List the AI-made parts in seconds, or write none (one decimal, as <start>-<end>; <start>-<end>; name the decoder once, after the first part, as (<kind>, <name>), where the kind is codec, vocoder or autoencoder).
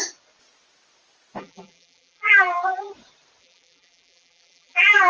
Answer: 1.4-2.9 (vocoder, BigVGAN v2); 3.4-5.1